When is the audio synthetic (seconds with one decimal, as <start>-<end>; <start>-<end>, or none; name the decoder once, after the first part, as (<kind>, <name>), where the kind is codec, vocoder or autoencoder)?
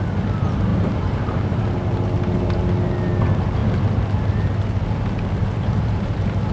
0.7-1.6 (vocoder, BigVGAN v2); 5.4-6.5